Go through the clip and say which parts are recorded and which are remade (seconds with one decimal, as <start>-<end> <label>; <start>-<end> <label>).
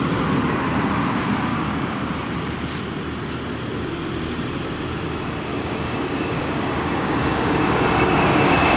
0.0-1.5 recorded; 1.5-2.1 remade; 2.1-5.5 recorded; 5.5-8.8 remade